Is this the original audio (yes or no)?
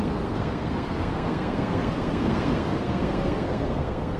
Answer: no